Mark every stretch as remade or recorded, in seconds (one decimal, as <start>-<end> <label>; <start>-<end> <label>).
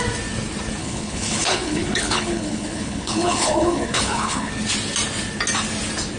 0.0-0.8 recorded; 0.8-4.5 remade; 4.5-6.2 recorded